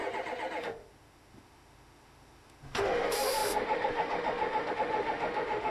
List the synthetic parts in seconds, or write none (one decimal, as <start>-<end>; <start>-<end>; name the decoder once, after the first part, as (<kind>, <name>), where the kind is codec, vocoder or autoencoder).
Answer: 0.6-5.7 (autoencoder, DAC-VAE)